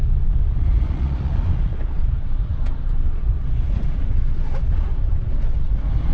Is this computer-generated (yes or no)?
yes